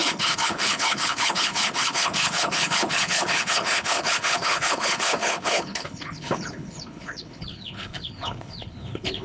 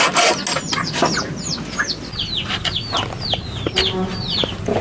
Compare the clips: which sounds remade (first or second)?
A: first